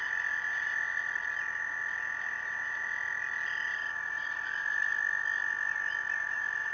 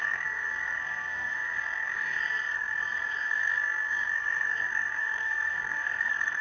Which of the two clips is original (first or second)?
first